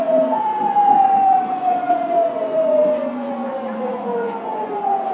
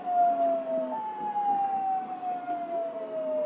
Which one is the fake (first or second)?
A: first